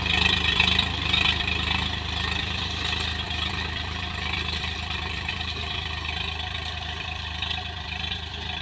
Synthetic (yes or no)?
yes